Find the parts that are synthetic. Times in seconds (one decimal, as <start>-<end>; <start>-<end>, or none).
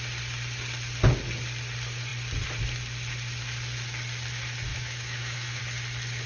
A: 4.7-5.6